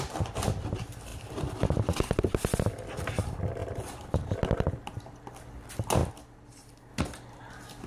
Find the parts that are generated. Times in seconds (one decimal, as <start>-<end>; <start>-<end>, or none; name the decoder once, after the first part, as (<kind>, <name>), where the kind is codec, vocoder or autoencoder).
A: 1.1-3.0 (vocoder, BigVGAN v2); 3.6-4.8; 6.0-6.9